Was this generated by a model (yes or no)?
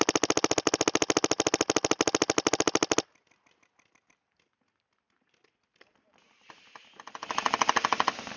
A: no